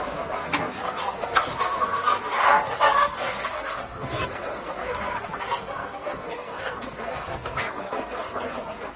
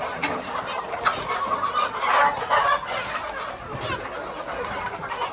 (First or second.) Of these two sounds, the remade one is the first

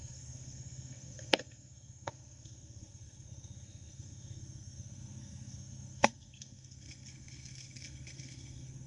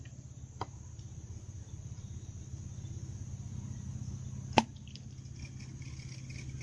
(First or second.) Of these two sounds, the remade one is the first